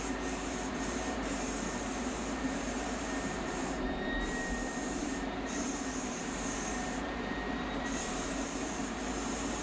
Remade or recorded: remade